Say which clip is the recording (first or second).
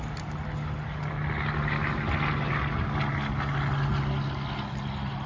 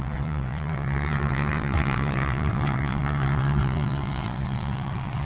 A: first